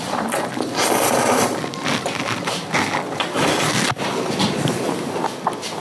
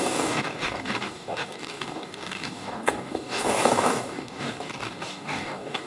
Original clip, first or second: first